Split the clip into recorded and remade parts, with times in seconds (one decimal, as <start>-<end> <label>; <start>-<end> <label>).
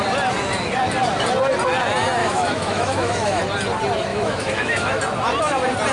0.0-2.2 recorded; 2.2-3.4 remade; 3.4-4.1 recorded; 4.1-5.0 remade; 5.0-5.9 recorded